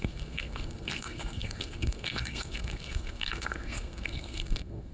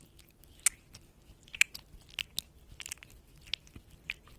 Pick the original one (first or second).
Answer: second